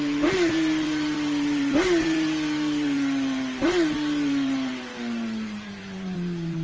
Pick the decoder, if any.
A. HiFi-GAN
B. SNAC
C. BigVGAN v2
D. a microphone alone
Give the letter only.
C